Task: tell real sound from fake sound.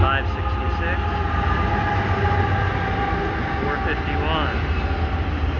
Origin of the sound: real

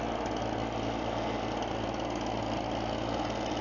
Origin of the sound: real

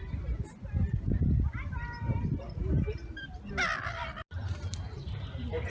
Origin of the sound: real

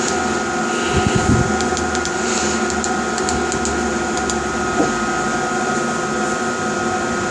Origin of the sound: real